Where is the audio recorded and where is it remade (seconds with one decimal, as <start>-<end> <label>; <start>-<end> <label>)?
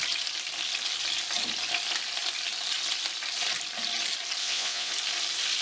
0.0-4.4 recorded; 4.4-4.9 remade; 4.9-5.6 recorded